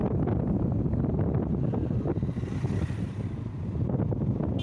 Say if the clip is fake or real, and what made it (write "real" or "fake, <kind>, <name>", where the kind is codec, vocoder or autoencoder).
real